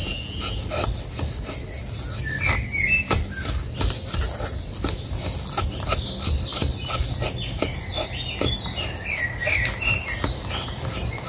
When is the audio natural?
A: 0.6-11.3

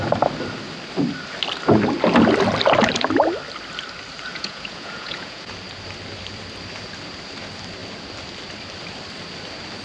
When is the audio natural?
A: 0.0-4.3; 5.5-9.8

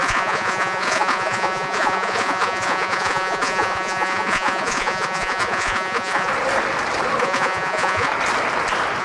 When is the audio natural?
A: 6.3-7.2; 8.1-9.0

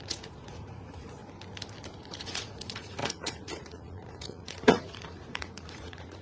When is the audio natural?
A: 1.2-2.0

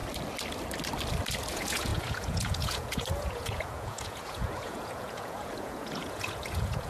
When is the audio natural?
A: 0.0-1.5

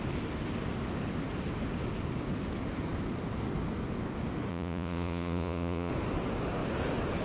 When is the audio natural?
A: 0.0-4.5; 5.9-7.2